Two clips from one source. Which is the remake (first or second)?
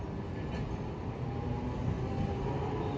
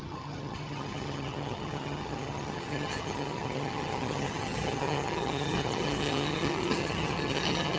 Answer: second